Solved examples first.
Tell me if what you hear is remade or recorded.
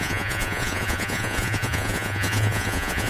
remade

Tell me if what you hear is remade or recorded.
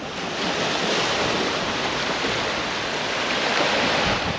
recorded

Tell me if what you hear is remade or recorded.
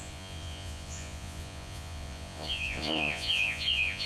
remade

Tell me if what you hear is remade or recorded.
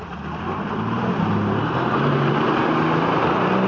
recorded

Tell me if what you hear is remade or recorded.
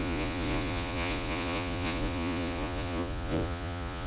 remade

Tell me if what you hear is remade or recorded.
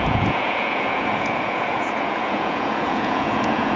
remade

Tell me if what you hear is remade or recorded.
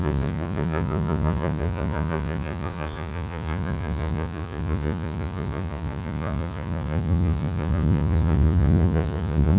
remade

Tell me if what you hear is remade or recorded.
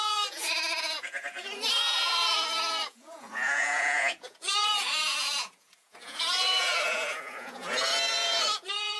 remade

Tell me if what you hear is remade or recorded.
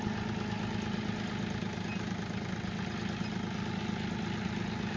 recorded